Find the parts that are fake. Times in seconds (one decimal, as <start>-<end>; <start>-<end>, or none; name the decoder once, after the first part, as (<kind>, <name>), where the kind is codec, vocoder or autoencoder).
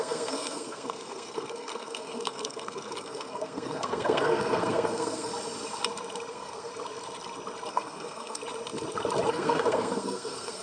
0.0-5.3 (codec, SNAC); 6.3-6.7; 7.7-8.4; 9.3-10.6